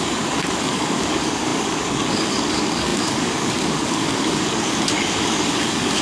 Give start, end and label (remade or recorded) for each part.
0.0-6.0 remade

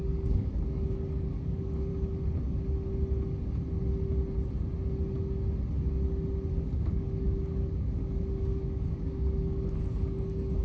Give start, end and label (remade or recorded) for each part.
0.0-1.9 remade; 1.9-6.5 recorded; 6.5-10.6 remade

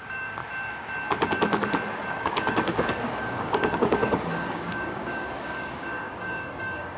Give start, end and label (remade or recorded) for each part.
0.0-0.4 remade; 0.4-2.1 recorded; 2.1-7.0 remade

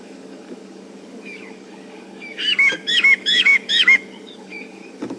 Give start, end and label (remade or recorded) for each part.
0.0-5.2 remade

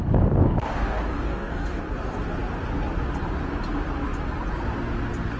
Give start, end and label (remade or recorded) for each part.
0.0-0.4 recorded; 0.4-1.8 remade; 1.8-5.4 recorded

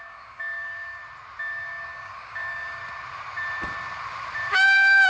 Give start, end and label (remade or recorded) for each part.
0.0-1.0 remade; 1.0-1.5 recorded; 1.5-2.8 remade; 2.8-4.5 recorded; 4.5-5.1 remade